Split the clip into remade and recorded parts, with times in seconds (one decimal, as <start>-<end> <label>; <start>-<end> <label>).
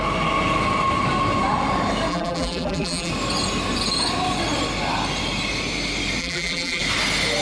0.0-2.1 recorded; 2.1-3.1 remade; 3.1-6.2 recorded; 6.2-6.8 remade; 6.8-7.4 recorded